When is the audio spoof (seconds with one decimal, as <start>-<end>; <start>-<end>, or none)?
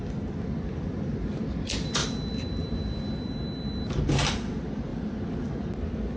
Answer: none